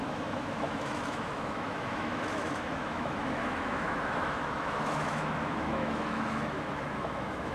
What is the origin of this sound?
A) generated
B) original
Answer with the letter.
A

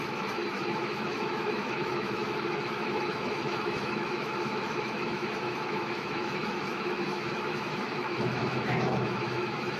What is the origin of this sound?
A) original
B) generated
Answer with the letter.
B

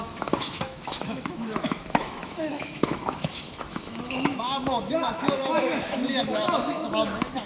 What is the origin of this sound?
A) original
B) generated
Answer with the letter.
B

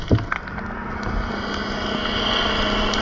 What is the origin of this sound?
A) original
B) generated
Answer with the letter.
A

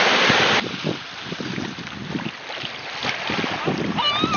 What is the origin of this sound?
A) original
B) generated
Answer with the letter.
A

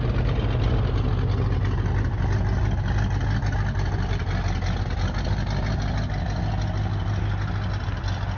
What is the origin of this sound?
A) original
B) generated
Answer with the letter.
A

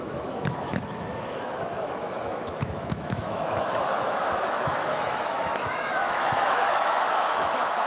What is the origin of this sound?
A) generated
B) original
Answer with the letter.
A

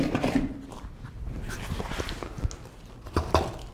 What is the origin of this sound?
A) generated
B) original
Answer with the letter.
B